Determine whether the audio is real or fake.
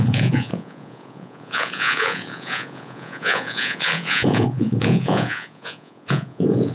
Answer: fake